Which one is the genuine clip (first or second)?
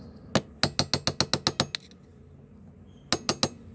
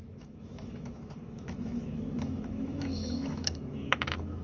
first